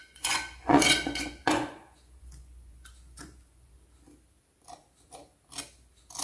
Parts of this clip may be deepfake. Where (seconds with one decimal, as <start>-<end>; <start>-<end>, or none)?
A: 0.0-3.7